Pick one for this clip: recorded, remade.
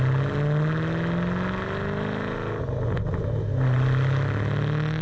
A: recorded